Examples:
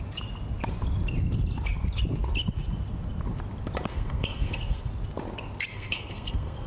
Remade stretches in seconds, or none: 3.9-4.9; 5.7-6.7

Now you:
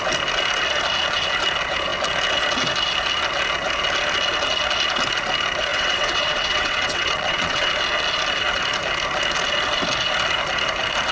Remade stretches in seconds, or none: 5.7-7.7

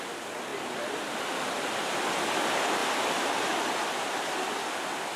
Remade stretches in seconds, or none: 0.0-0.5; 2.4-2.8

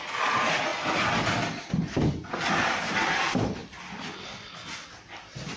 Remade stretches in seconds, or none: none

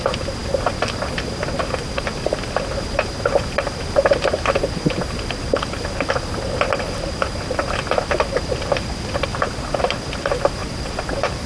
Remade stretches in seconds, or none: 9.3-10.0; 10.6-11.5

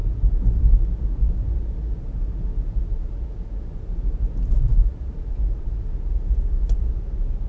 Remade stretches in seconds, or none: 4.7-6.9